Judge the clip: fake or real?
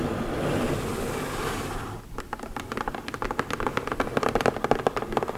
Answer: real